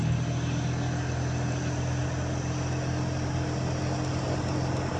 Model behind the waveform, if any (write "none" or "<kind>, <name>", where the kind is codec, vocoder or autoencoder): none